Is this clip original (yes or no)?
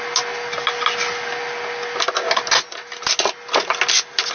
yes